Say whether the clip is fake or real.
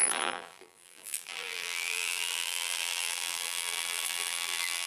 fake